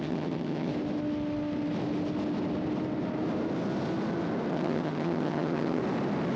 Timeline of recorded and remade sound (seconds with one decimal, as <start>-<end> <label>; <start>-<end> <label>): 0.0-0.7 remade; 0.7-4.5 recorded; 4.5-5.8 remade; 5.8-6.4 recorded

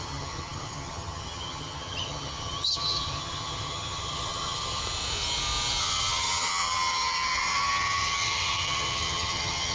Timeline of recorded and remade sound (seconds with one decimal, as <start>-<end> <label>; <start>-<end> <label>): 0.0-4.8 remade; 4.8-5.8 recorded; 5.8-9.7 remade

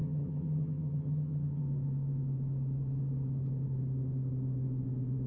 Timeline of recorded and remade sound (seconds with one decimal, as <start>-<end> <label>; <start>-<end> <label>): 0.0-1.6 remade; 1.6-5.3 recorded

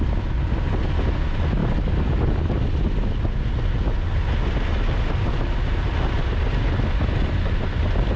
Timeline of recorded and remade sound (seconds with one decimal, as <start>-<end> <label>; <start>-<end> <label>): 0.0-8.2 recorded

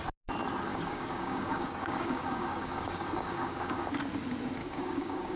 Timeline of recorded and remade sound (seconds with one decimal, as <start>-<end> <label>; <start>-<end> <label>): 0.0-0.7 recorded; 0.7-3.9 remade; 3.9-4.6 recorded; 4.6-5.4 remade

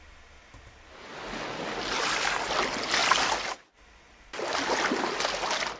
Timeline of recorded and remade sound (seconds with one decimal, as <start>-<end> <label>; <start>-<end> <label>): 0.0-5.8 recorded

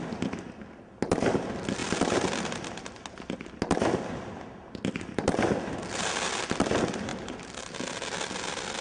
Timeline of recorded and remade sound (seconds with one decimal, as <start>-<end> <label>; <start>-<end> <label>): 0.0-8.8 recorded

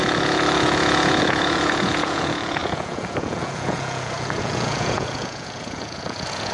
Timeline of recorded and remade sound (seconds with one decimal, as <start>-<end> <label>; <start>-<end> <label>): 0.0-6.5 remade